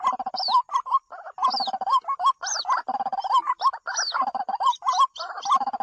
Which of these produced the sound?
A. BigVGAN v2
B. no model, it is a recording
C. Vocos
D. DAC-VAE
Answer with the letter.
A